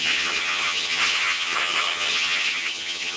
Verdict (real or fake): fake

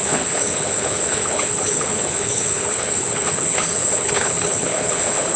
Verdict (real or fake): fake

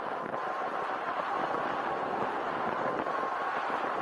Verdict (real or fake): real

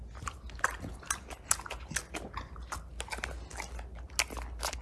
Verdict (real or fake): real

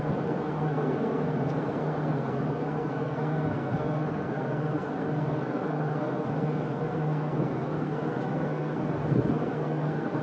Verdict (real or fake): fake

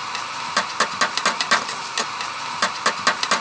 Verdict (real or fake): real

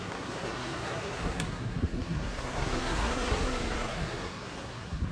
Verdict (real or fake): fake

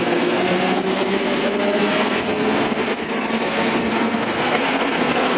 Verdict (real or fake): fake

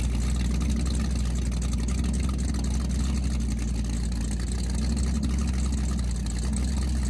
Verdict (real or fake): real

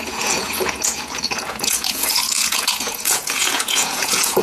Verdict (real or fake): fake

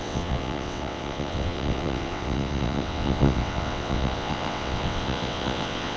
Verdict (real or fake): fake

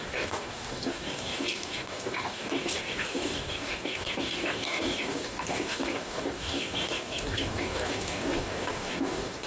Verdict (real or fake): fake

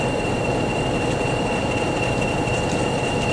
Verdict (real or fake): fake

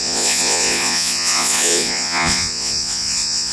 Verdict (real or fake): fake